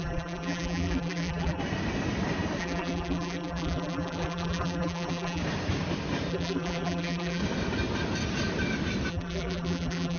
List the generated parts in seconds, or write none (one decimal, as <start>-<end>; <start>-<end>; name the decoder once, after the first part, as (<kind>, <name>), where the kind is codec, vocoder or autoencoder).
0.0-1.6 (vocoder, BigVGAN v2); 2.6-5.4; 6.3-7.4; 9.1-10.2